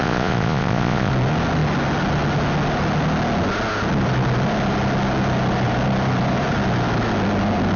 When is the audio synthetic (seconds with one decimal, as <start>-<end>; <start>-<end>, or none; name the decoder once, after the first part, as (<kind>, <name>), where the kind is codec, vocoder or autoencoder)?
0.0-1.1 (vocoder, Vocos)